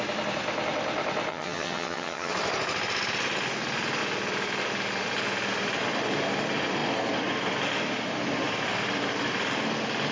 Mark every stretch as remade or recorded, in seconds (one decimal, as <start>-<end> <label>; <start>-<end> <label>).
0.0-1.3 recorded; 1.3-2.3 remade; 2.3-10.1 recorded